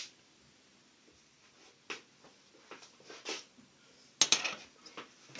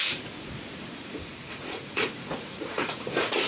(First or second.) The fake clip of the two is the second